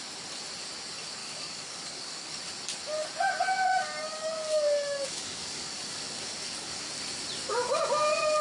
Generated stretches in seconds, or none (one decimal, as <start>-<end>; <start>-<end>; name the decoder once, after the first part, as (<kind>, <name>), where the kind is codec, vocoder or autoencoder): 1.2-2.4 (codec, DAC); 3.7-6.9